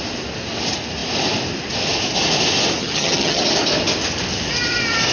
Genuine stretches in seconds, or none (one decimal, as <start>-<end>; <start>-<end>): 0.0-2.8; 3.4-5.1